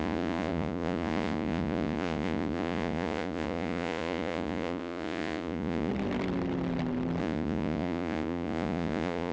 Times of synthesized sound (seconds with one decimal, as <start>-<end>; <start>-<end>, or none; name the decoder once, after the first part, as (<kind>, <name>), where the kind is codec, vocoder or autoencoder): 0.0-5.9 (vocoder, Vocos); 7.2-9.3